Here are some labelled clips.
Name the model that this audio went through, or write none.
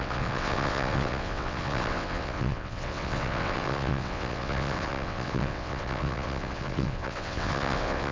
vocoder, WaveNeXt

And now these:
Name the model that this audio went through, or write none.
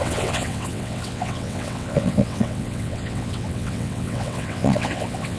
vocoder, WaveNeXt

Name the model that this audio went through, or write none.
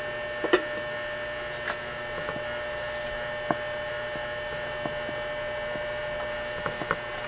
none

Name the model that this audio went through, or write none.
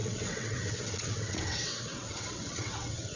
vocoder, WaveNeXt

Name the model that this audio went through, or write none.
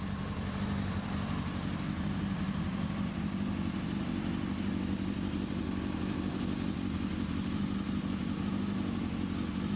none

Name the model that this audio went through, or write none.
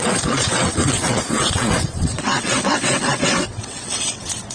vocoder, WaveNeXt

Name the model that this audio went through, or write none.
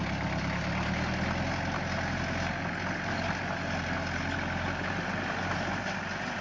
none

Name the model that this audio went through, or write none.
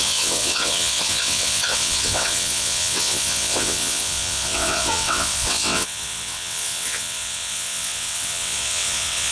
vocoder, WaveNeXt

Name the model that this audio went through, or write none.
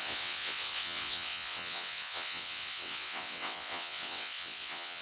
vocoder, WaveNeXt